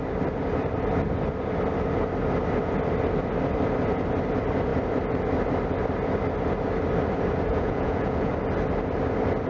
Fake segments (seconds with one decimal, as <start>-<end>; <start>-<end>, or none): 7.5-8.3